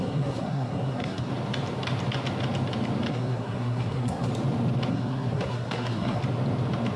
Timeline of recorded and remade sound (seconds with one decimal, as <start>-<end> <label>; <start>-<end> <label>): 0.0-1.3 remade; 1.3-3.1 recorded; 3.1-4.3 remade; 4.3-4.9 recorded; 4.9-6.2 remade; 6.2-7.0 recorded